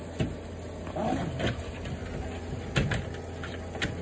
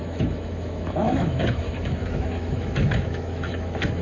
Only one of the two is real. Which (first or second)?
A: first